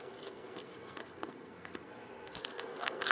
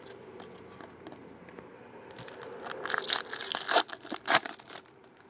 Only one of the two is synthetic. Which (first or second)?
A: first